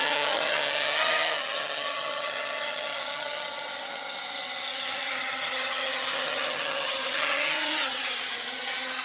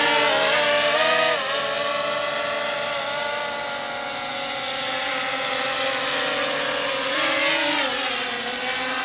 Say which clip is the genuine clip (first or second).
second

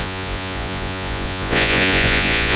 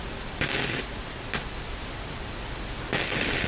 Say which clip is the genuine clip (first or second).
second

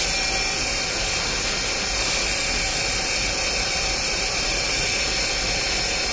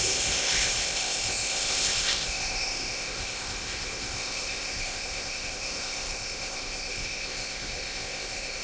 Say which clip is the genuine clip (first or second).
first